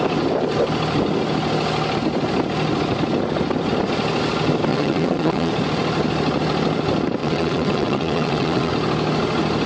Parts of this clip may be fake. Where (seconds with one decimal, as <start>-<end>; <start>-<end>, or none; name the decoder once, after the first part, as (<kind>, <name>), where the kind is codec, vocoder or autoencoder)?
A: 4.7-5.5 (vocoder, WaveNeXt); 7.2-8.7